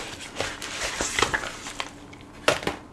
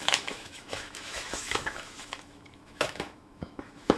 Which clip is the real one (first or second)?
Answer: first